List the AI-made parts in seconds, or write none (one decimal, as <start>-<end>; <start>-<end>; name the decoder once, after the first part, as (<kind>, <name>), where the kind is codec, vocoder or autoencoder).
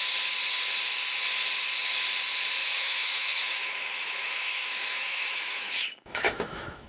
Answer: 2.6-6.9 (autoencoder, DAC-VAE)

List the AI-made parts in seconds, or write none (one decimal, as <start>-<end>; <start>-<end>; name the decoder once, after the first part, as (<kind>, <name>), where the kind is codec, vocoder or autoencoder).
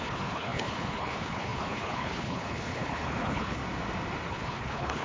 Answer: 0.0-3.6 (codec, HILCodec); 4.3-5.0